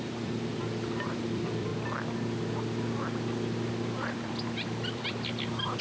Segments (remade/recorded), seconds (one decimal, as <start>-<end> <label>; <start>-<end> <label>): 0.0-1.7 remade; 1.7-3.7 recorded; 3.7-5.8 remade